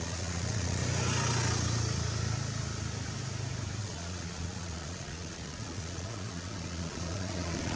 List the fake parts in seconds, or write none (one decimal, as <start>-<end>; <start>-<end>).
0.0-0.8; 3.8-7.8